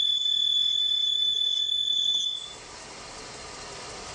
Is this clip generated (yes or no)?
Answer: no